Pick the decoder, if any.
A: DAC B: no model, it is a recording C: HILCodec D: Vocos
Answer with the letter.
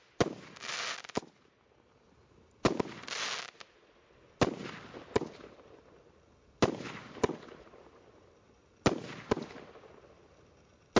B